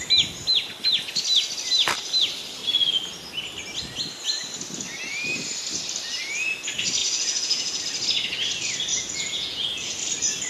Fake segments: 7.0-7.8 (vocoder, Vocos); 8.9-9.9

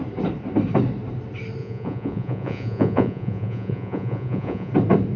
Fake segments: 1.6-4.7 (vocoder, Vocos)

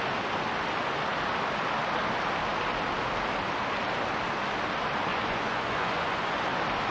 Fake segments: 5.1-6.4 (vocoder, Vocos)